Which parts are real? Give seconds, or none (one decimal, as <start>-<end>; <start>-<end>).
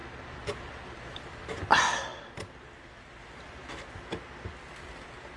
1.7-2.1; 3.8-5.4